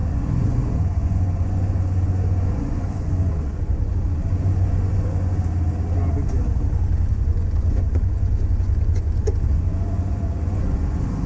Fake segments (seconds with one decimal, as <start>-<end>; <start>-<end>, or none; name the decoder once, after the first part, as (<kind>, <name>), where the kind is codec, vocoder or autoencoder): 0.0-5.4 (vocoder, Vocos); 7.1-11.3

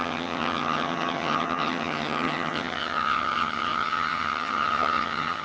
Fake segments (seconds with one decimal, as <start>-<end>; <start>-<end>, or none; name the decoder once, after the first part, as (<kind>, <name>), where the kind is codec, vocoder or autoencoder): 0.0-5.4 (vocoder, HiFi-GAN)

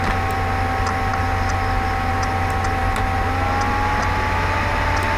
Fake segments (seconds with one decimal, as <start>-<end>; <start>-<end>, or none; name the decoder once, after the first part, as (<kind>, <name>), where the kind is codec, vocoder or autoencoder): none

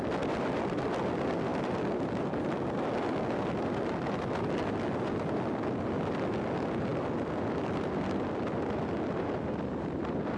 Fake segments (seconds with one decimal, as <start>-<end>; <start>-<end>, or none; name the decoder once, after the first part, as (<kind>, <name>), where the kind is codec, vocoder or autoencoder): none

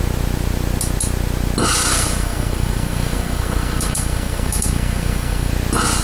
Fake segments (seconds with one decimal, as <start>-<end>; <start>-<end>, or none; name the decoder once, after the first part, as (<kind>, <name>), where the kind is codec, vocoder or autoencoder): 1.9-5.5 (codec, SNAC)

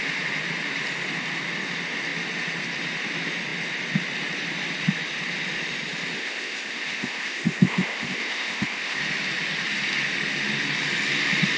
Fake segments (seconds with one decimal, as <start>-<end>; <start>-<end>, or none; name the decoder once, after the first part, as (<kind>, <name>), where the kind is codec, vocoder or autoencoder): 6.2-9.0 (codec, ZipCodec)

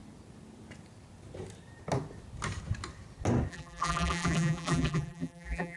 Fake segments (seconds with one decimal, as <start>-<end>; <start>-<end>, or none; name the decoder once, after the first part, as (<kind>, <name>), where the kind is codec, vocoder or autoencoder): 3.5-5.8 (vocoder, BigVGAN v2)